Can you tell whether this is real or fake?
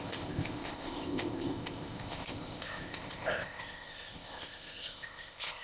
fake